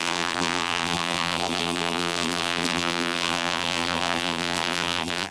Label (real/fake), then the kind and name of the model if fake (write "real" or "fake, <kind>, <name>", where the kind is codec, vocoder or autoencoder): fake, vocoder, BigVGAN v2